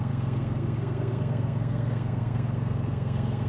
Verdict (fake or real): fake